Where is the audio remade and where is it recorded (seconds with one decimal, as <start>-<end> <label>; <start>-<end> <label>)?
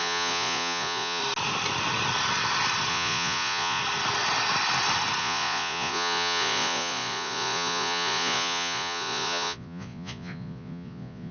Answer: 0.0-1.2 remade; 1.2-2.9 recorded; 2.9-3.8 remade; 3.8-5.2 recorded; 5.2-11.3 remade